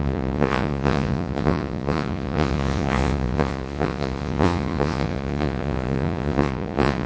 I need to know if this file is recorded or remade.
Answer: remade